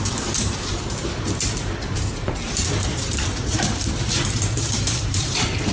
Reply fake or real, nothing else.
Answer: fake